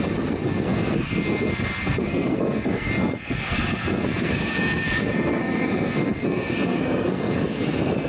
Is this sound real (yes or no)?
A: no